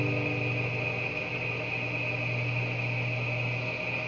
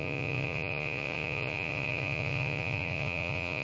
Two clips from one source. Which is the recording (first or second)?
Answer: first